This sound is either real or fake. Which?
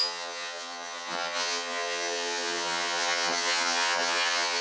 fake